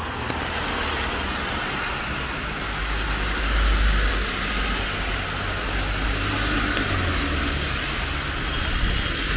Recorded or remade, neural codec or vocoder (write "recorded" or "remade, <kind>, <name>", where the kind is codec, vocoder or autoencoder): recorded